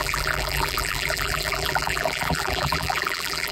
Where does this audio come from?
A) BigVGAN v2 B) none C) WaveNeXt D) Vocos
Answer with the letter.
A